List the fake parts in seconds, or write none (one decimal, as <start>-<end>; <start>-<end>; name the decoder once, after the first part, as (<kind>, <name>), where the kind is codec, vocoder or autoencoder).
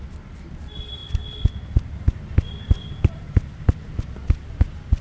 none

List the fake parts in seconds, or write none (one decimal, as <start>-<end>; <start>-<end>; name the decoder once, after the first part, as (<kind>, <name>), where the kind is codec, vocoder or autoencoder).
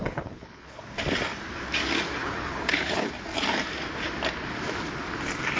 0.0-0.8 (codec, HILCodec); 2.2-3.1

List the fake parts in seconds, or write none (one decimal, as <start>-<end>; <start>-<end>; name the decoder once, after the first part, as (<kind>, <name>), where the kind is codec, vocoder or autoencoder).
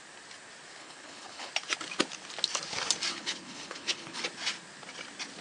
0.8-1.5 (codec, HILCodec); 3.1-4.2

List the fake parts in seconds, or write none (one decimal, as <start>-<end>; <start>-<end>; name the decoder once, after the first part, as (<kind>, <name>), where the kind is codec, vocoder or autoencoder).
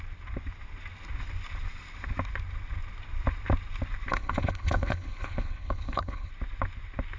4.1-6.3 (codec, HILCodec)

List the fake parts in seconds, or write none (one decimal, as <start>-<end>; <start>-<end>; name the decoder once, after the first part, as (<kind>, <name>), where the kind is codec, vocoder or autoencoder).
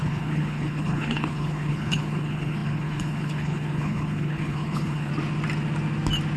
0.0-5.1 (codec, HILCodec)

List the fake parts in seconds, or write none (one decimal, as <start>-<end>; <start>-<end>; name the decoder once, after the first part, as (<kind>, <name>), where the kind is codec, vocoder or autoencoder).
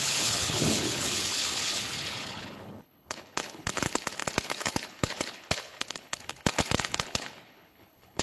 0.0-8.2 (codec, HILCodec)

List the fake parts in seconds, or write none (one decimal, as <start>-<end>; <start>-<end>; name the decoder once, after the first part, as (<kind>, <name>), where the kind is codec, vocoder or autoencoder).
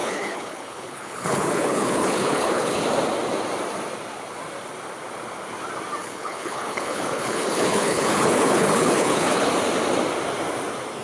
0.0-2.8 (codec, HILCodec); 6.0-9.5